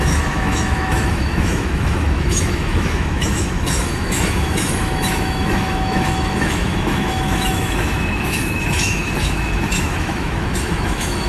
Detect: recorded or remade remade